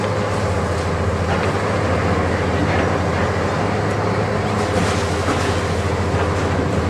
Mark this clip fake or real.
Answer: real